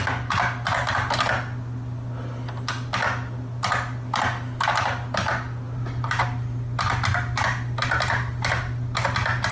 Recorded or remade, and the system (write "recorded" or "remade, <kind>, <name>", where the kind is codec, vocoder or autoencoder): recorded